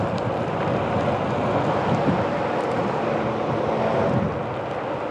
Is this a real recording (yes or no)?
yes